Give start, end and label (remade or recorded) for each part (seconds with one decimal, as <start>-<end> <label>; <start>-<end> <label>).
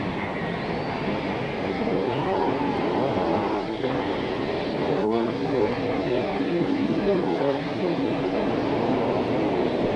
0.0-1.7 recorded; 1.7-2.5 remade; 2.5-3.5 recorded; 3.5-4.0 remade; 4.0-4.9 recorded; 4.9-8.5 remade; 8.5-10.0 recorded